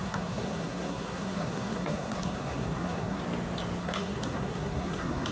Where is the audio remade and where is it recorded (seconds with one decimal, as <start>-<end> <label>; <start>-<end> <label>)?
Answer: 0.0-3.2 remade; 3.2-3.8 recorded; 3.8-5.3 remade